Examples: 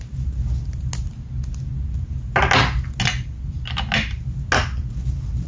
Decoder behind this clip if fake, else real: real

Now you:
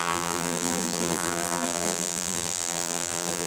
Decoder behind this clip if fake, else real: fake, vocoder, BigVGAN v2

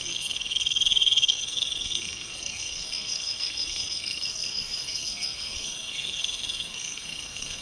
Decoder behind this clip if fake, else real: fake, codec, SNAC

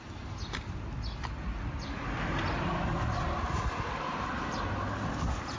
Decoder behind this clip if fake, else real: real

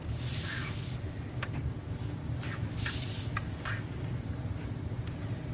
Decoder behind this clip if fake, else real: real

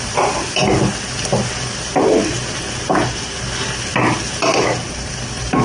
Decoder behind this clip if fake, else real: real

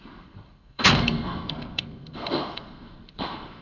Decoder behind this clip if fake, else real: fake, codec, SNAC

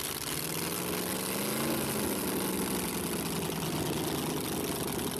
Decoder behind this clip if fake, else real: real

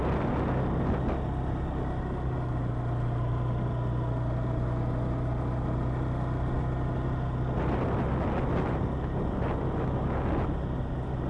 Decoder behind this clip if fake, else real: real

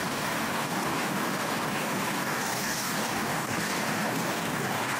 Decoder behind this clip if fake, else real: fake, codec, DAC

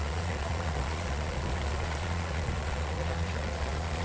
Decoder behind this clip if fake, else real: fake, vocoder, Vocos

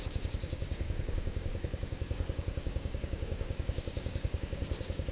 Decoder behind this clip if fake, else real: fake, codec, DAC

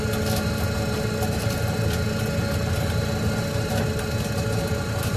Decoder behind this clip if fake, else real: real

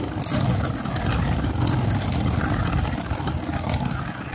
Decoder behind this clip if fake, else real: real